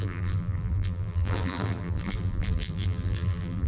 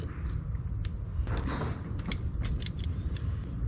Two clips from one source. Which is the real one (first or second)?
second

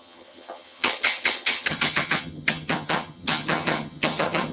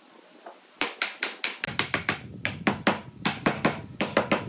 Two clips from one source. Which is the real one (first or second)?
second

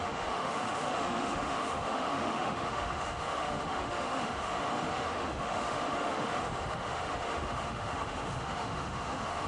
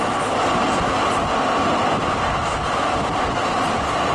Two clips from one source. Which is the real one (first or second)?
second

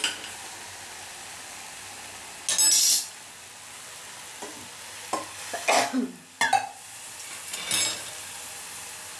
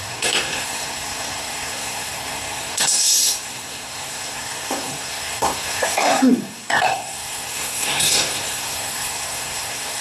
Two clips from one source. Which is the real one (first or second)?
first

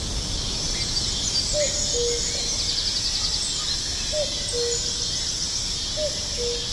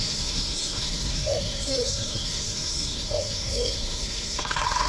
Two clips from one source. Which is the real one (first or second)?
first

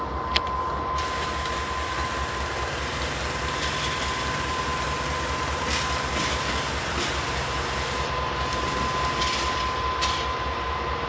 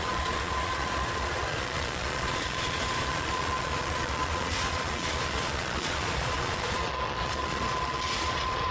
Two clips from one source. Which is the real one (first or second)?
first